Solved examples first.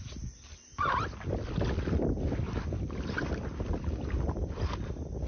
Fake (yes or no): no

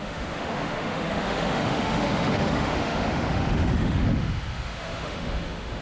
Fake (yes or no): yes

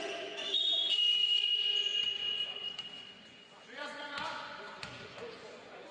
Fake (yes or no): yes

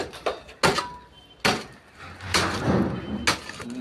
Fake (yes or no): no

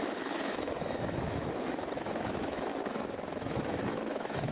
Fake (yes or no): yes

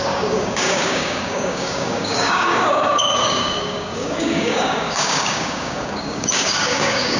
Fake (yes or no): yes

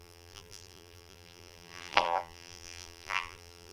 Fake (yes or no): yes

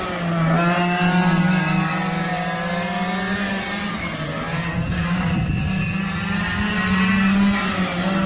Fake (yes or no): no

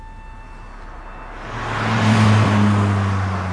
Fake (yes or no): no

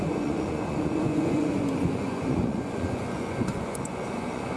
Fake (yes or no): yes